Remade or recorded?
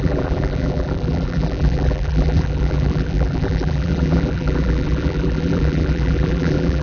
remade